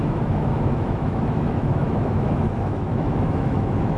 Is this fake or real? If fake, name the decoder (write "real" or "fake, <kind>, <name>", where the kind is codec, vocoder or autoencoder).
fake, autoencoder, DAC-VAE